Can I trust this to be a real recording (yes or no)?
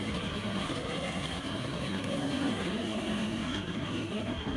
no